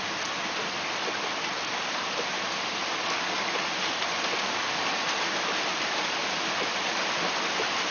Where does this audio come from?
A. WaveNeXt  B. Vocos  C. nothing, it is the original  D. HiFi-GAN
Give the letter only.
C